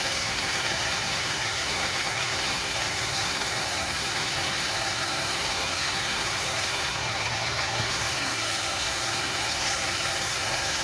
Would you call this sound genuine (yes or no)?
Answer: no